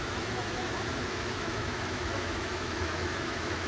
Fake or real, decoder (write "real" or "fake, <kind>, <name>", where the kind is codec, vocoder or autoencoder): fake, autoencoder, DAC-VAE